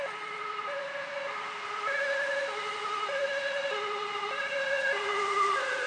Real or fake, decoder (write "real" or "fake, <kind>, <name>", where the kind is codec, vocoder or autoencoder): real